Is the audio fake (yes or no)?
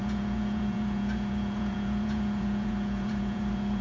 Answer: yes